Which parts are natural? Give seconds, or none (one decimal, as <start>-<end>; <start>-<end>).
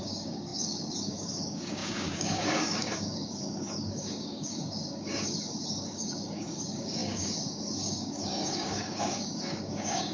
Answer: none